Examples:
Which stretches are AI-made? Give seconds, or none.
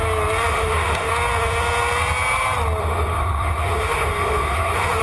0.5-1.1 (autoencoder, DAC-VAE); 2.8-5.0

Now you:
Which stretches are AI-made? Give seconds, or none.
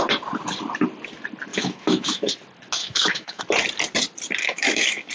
1.5-2.3 (autoencoder, DAC-VAE); 2.8-3.4; 4.4-5.1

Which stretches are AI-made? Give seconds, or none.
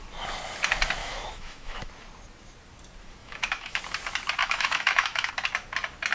1.0-1.9 (autoencoder, DAC-VAE); 3.2-3.8; 4.4-5.3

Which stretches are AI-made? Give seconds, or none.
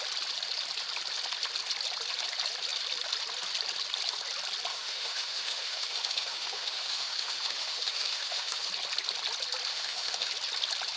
4.7-8.7 (autoencoder, DAC-VAE); 9.7-10.3